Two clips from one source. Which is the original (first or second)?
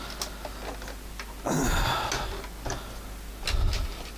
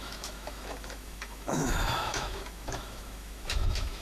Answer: first